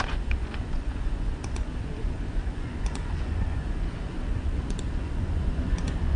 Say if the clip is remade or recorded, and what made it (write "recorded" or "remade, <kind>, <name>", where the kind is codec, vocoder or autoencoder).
remade, vocoder, Vocos